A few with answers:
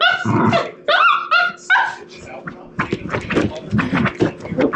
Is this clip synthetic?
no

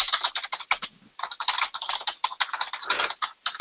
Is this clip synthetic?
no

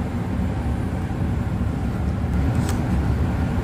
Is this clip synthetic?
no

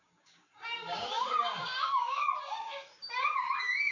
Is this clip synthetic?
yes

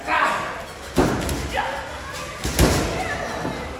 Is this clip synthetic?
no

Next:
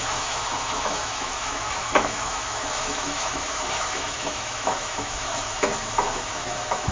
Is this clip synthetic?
yes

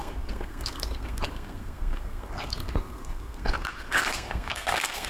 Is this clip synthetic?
yes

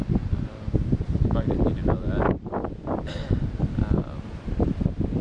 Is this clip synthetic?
no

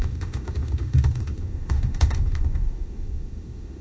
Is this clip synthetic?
yes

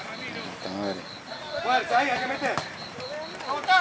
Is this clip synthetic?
no